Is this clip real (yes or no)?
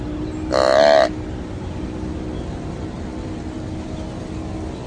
yes